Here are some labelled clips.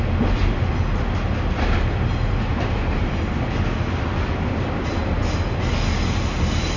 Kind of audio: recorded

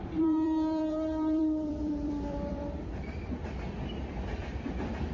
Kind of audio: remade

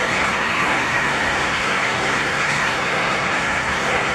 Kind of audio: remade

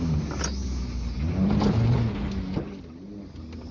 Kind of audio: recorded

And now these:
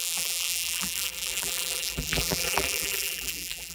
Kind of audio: remade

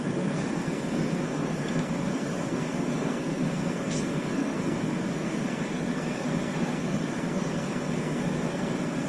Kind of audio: remade